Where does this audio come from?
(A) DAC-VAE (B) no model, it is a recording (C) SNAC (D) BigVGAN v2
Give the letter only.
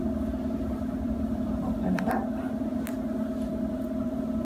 D